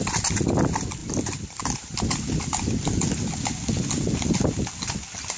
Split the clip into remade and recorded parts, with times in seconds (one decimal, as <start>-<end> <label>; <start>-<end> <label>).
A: 0.0-5.4 recorded